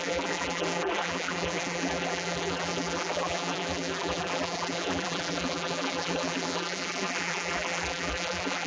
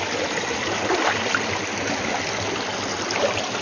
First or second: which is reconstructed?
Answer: first